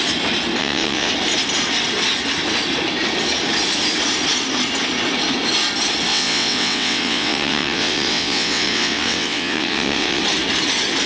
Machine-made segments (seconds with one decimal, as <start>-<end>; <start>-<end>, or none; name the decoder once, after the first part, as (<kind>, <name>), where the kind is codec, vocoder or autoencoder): 0.6-1.1 (vocoder, WaveNeXt); 6.1-10.2